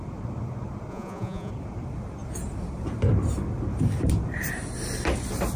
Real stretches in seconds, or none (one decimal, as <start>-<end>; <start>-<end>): 0.0-0.9; 1.5-5.6